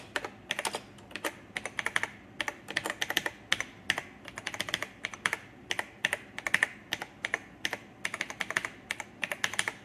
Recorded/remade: recorded